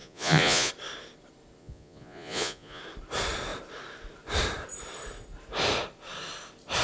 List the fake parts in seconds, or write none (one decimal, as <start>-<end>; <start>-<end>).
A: 0.0-0.7; 1.6-2.8